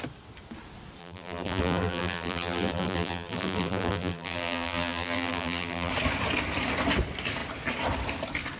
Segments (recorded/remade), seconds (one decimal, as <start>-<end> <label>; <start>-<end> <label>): 0.0-1.0 recorded; 1.0-5.9 remade; 5.9-8.6 recorded